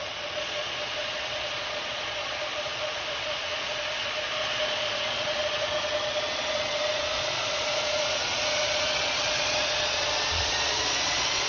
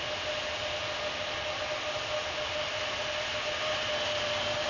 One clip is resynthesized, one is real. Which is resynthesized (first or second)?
first